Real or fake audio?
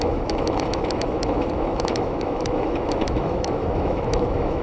fake